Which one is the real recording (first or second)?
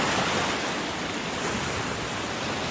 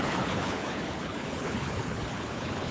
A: first